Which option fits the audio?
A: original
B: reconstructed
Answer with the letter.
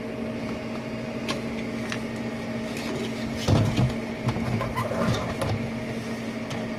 A